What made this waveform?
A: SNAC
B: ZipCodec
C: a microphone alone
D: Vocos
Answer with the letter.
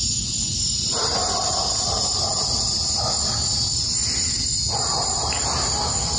C